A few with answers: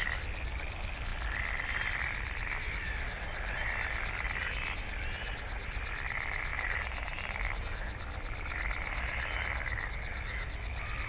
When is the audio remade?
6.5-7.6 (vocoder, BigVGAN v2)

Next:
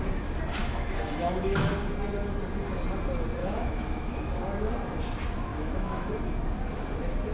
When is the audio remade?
0.6-1.7 (autoencoder, DAC-VAE); 3.4-4.4; 5.5-6.1

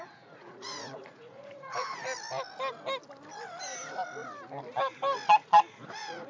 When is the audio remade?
0.0-2.0 (vocoder, Vocos); 5.8-6.3

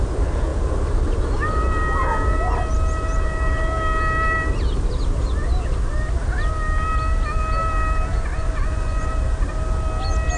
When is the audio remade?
8.3-9.1 (vocoder, Vocos)

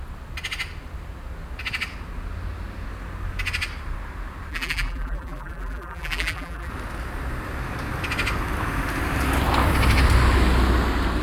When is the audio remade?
4.5-6.7 (vocoder, BigVGAN v2)

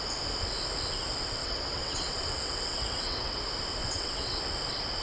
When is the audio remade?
1.4-3.4 (vocoder, WaveNeXt); 3.8-4.4